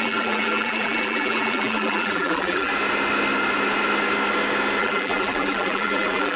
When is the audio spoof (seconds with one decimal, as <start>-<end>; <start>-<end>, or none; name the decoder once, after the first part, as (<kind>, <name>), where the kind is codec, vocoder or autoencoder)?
0.0-2.7 (vocoder, BigVGAN v2); 4.8-6.4